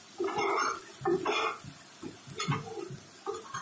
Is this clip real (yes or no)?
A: yes